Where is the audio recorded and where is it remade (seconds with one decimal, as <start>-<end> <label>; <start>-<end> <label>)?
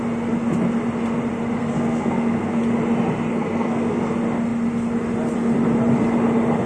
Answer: 0.0-1.6 recorded; 1.6-2.6 remade; 2.6-3.3 recorded; 3.3-4.0 remade; 4.0-6.7 recorded